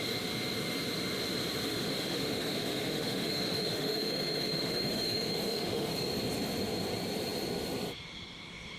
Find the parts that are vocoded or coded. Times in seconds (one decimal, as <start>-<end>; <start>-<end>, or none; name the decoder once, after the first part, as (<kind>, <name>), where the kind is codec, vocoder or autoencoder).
1.7-5.9 (autoencoder, DAC-VAE)